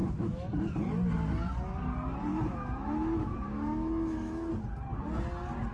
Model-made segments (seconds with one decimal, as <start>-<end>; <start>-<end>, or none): 0.0-0.5; 2.3-4.5